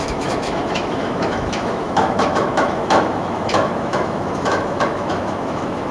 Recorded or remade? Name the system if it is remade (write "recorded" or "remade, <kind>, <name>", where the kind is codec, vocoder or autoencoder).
remade, autoencoder, DAC-VAE